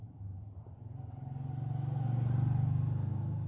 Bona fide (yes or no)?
yes